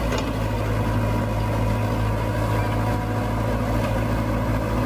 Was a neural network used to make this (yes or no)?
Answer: no